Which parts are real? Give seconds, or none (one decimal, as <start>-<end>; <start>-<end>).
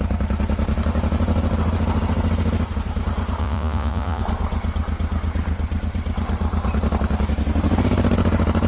0.0-3.4; 4.2-8.7